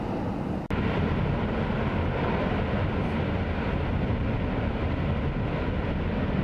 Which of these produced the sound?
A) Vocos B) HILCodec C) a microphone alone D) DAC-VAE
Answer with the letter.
C